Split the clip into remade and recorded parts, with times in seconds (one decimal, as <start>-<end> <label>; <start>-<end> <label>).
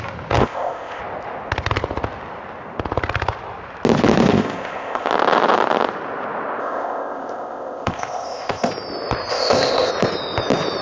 0.0-0.4 recorded; 0.4-1.0 remade; 1.0-4.3 recorded; 4.3-5.1 remade; 5.1-6.6 recorded; 6.6-8.7 remade; 8.7-9.3 recorded; 9.3-9.9 remade; 9.9-10.8 recorded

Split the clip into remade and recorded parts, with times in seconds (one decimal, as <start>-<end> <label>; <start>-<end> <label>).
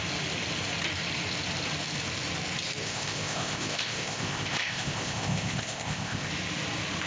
0.0-2.8 recorded; 2.8-6.3 remade; 6.3-7.1 recorded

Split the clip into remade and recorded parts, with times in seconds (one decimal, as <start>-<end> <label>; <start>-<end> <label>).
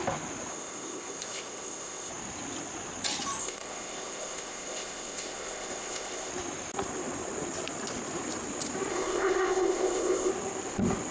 0.0-0.5 recorded; 0.5-2.1 remade; 2.1-3.4 recorded; 3.4-6.3 remade; 6.3-8.9 recorded; 8.9-10.3 remade; 10.3-11.1 recorded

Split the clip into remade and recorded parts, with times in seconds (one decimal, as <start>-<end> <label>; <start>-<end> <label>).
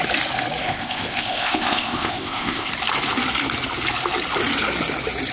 0.0-0.6 recorded; 0.6-2.7 remade; 2.7-5.3 recorded